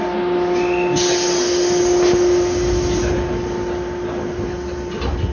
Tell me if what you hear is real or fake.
real